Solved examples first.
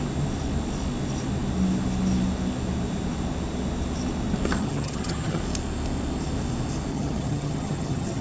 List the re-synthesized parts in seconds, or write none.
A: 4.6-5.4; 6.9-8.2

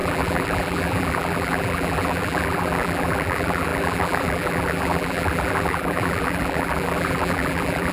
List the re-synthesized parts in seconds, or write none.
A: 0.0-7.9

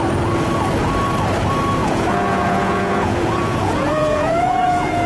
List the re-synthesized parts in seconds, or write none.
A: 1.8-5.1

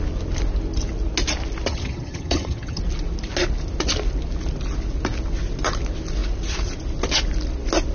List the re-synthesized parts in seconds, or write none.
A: 1.7-2.8

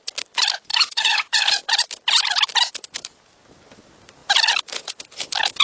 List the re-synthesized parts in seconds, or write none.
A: 0.7-1.9